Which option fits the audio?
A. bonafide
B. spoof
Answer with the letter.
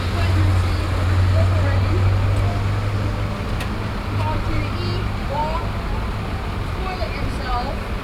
A